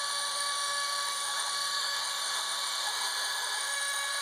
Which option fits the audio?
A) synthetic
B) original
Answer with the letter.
A